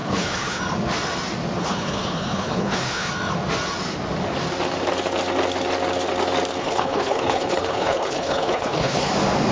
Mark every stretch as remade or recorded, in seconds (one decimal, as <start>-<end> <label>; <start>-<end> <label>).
0.0-0.6 remade; 0.6-1.6 recorded; 1.6-3.1 remade; 3.1-6.6 recorded; 6.6-9.1 remade; 9.1-9.5 recorded